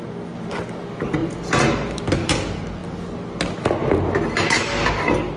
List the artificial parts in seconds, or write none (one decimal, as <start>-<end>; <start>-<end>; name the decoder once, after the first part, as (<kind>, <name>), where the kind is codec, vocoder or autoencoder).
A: none